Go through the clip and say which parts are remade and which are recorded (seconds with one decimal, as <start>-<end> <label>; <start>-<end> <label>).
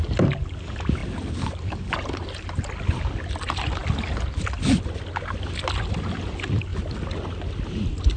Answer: 0.0-8.2 recorded